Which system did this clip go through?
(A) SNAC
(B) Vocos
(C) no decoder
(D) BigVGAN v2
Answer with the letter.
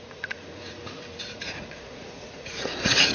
B